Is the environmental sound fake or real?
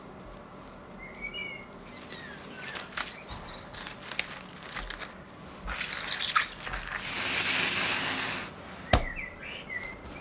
real